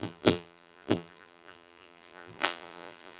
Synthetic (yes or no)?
yes